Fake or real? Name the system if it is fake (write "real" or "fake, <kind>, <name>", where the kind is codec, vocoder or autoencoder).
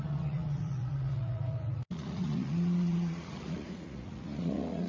fake, vocoder, Vocos